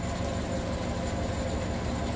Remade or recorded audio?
recorded